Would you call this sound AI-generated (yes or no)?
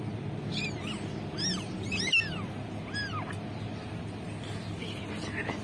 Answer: no